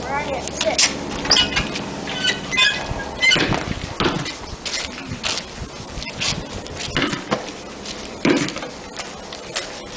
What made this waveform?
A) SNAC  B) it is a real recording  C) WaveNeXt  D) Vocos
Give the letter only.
B